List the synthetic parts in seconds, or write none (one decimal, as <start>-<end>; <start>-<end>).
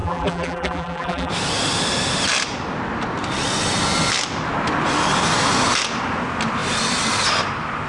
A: 0.0-1.3